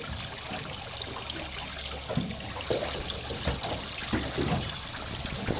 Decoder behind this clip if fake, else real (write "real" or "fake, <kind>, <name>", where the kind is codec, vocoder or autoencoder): real